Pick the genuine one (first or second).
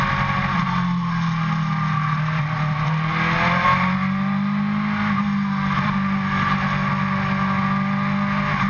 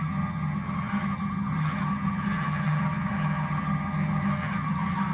first